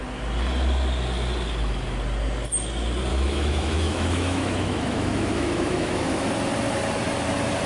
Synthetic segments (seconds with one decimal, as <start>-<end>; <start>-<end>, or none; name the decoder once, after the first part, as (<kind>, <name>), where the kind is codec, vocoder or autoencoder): 3.1-6.3 (autoencoder, DAC-VAE)